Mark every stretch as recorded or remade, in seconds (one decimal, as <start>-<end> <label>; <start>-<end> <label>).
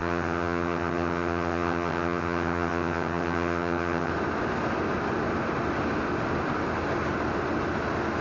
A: 0.0-4.1 remade; 4.1-8.2 recorded